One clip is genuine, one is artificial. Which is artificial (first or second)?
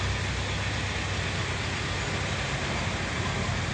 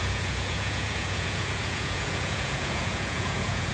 second